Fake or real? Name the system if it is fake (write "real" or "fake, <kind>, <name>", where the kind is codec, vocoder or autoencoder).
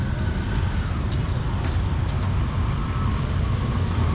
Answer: real